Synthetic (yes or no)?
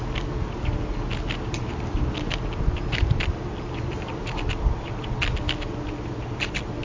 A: no